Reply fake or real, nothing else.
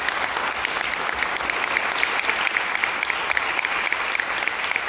real